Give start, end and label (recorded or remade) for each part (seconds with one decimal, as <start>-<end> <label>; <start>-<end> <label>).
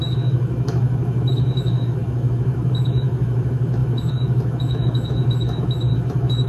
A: 0.0-6.5 remade